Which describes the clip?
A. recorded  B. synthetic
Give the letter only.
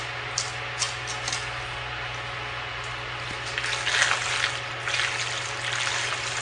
A